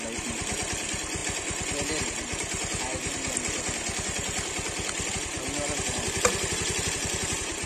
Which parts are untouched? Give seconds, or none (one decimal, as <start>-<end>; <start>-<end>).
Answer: 0.0-7.7